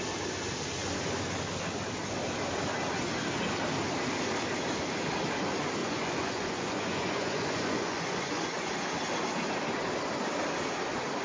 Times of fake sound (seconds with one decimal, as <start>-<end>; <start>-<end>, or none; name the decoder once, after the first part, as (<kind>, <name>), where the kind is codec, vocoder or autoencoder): 5.8-8.7 (vocoder, Vocos)